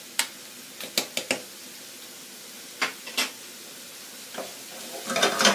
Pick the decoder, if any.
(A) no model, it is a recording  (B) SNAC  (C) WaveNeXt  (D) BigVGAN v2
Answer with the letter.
A